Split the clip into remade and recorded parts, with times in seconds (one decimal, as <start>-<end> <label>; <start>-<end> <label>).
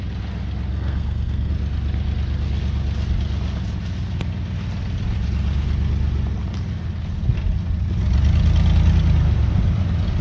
0.0-0.7 recorded; 0.7-1.5 remade; 1.5-10.2 recorded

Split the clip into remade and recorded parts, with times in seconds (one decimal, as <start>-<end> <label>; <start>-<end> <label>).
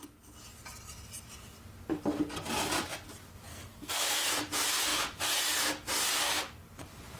0.0-3.5 recorded; 3.5-4.3 remade; 4.3-7.2 recorded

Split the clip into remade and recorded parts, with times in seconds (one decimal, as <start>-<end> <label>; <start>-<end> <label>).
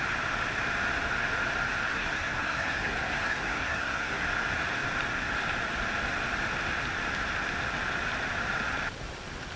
0.0-1.9 recorded; 1.9-4.2 remade; 4.2-9.6 recorded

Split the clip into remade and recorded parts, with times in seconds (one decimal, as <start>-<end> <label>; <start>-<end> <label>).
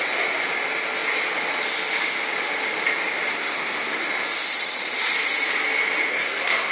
0.0-3.3 recorded; 3.3-4.0 remade; 4.0-6.1 recorded; 6.1-6.7 remade